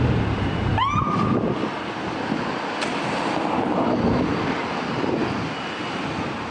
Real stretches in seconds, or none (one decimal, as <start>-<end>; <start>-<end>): 0.0-6.5